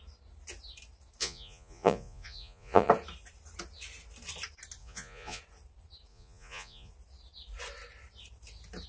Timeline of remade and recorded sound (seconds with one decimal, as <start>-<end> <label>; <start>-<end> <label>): 0.0-1.2 recorded; 1.2-2.9 remade; 2.9-4.8 recorded; 4.8-5.4 remade; 5.4-6.1 recorded; 6.1-6.9 remade; 6.9-8.9 recorded